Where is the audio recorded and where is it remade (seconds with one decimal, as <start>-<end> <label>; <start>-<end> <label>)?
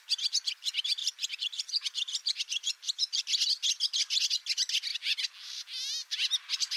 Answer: 0.0-1.0 recorded; 1.0-3.2 remade; 3.2-6.8 recorded